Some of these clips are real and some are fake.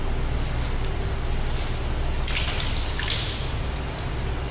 real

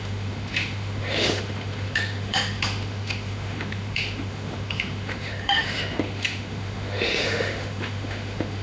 fake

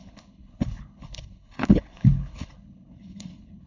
fake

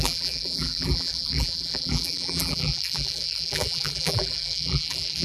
fake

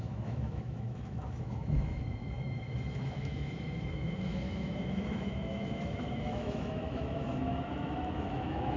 fake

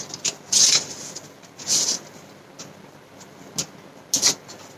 real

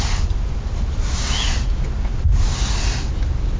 real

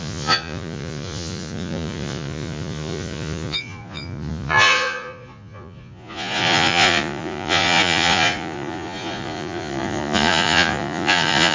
fake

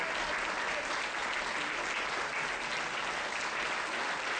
real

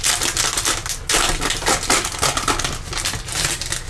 real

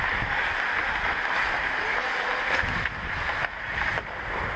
real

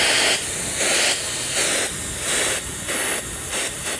real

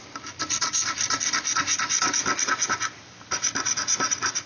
real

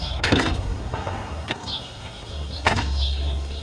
fake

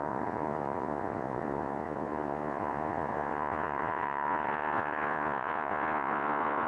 fake